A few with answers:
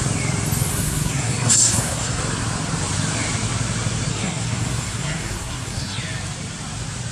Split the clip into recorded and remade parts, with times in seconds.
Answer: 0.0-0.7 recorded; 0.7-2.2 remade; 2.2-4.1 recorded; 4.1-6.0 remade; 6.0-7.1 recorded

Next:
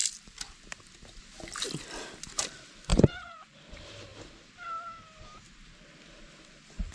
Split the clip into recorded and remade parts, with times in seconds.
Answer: 0.0-2.9 recorded; 2.9-3.6 remade; 3.6-6.9 recorded

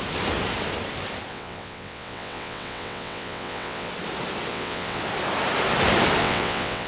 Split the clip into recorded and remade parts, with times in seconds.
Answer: 0.0-1.3 recorded; 1.3-3.9 remade; 3.9-4.5 recorded; 4.5-5.0 remade; 5.0-6.2 recorded; 6.2-6.9 remade

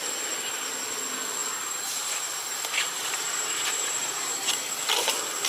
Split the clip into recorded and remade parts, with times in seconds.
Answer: 0.0-1.4 recorded; 1.4-4.7 remade; 4.7-5.5 recorded

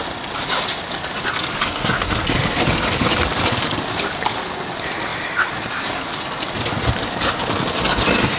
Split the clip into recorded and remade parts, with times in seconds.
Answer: 0.0-1.6 recorded; 1.6-2.2 remade; 2.2-8.4 recorded

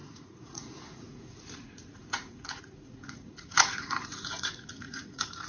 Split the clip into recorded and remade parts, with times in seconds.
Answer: 0.0-5.5 remade

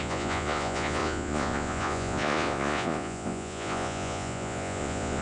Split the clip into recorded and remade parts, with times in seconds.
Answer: 0.0-5.2 remade